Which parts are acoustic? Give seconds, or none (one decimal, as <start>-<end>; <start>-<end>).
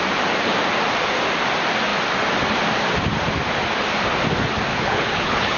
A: 0.0-4.7